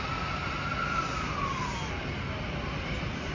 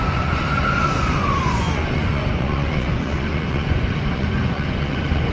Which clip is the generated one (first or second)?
second